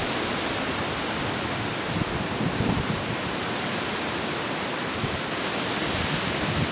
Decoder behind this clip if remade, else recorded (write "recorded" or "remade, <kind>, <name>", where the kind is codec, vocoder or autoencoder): recorded